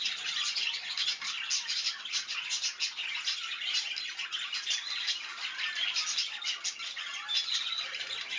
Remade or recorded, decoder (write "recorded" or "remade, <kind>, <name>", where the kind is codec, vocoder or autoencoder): recorded